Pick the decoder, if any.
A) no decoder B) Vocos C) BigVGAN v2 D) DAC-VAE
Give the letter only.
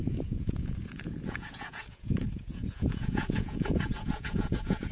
B